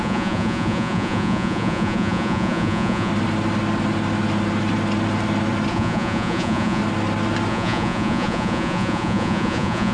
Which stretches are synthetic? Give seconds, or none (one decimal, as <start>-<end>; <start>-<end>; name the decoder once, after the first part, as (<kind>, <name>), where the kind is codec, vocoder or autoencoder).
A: 0.0-3.1 (vocoder, Vocos); 5.7-6.8; 7.5-9.9